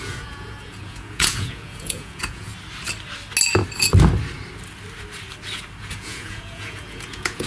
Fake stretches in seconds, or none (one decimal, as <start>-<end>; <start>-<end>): 0.0-2.5; 5.8-7.5